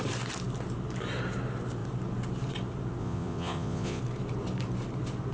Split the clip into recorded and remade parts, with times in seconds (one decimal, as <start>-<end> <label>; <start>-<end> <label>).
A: 0.0-3.0 recorded; 3.0-4.0 remade; 4.0-5.3 recorded